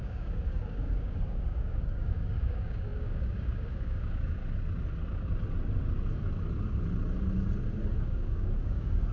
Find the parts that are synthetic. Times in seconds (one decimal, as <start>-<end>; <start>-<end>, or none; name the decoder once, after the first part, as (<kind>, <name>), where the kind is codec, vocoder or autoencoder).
0.0-4.4 (codec, DAC); 8.0-9.1